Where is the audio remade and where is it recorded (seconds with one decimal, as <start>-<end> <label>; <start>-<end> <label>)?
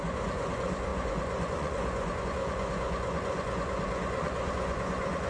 0.0-5.3 remade